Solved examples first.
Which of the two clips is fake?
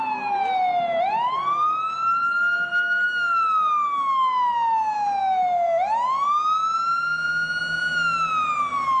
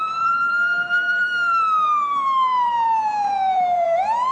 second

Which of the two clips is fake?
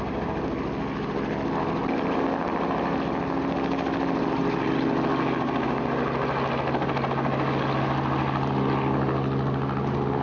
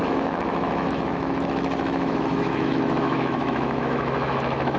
second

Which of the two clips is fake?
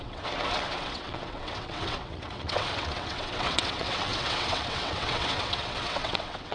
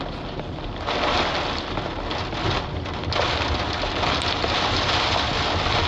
first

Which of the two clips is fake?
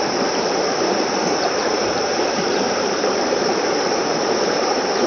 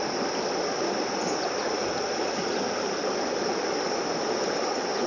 first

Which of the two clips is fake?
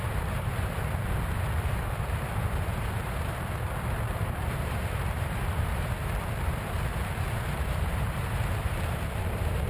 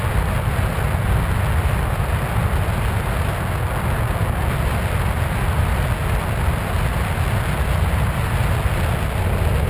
first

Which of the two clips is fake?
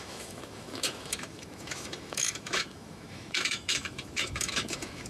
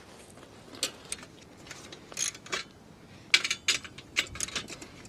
first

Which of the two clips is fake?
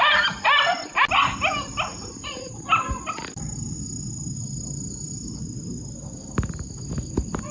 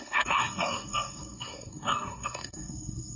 second